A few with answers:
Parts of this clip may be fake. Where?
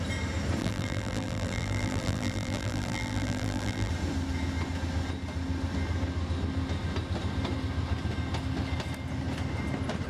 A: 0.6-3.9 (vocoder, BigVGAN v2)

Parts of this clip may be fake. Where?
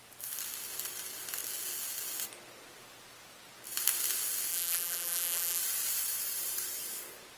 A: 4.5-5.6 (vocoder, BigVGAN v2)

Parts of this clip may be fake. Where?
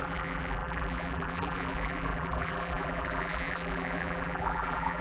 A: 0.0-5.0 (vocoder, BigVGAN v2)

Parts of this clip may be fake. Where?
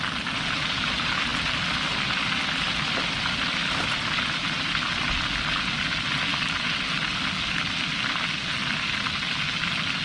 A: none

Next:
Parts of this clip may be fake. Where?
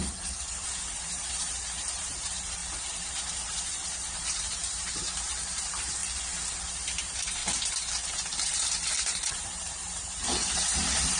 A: 0.0-2.6 (vocoder, BigVGAN v2); 3.3-6.0; 7.0-7.4; 7.9-11.2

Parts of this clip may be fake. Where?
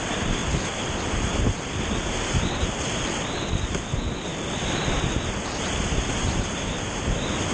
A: 0.4-1.5 (vocoder, BigVGAN v2); 4.3-4.9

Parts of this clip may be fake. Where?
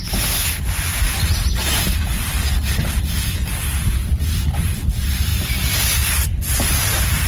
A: 2.1-3.0 (vocoder, BigVGAN v2); 5.3-7.3